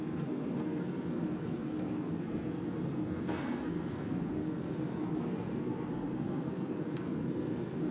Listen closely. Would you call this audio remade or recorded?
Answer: remade